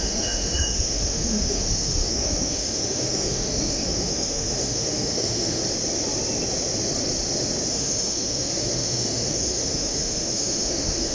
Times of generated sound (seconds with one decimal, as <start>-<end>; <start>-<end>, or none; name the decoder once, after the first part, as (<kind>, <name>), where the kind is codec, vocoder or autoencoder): 0.0-5.6 (autoencoder, DAC-VAE); 7.7-11.1